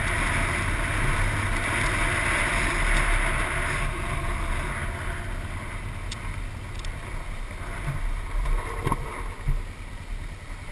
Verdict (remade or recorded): recorded